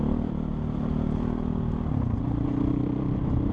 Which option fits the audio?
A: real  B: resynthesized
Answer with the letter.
A